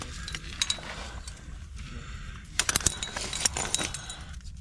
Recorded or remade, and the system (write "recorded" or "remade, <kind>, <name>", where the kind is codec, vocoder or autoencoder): remade, vocoder, BigVGAN v2